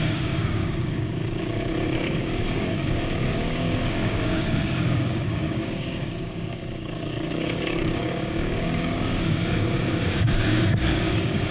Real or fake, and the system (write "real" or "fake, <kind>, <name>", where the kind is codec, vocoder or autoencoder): fake, codec, DAC